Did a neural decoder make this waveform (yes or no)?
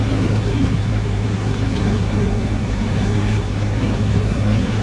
yes